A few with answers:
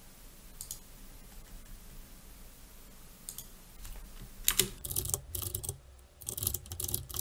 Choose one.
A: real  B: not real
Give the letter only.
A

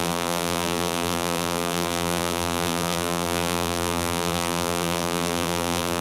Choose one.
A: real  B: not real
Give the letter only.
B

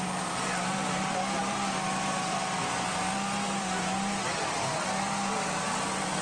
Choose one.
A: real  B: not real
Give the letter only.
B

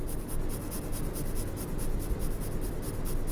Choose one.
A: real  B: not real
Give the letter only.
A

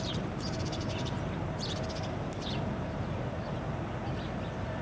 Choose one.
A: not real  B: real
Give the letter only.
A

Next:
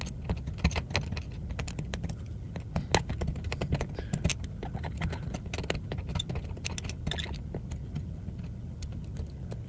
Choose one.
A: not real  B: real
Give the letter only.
B